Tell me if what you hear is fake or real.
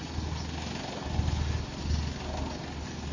real